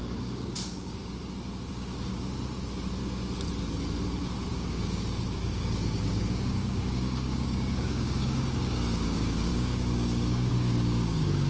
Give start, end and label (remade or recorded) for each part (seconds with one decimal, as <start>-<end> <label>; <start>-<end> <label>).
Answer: 0.0-1.0 remade; 1.0-1.7 recorded; 1.7-2.1 remade; 2.1-4.5 recorded; 4.5-11.5 remade